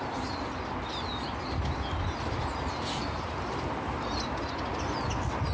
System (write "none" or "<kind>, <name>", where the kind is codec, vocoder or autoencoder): none